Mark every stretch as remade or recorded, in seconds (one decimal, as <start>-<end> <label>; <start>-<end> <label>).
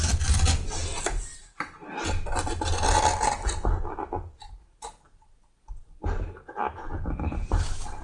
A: 0.0-8.0 recorded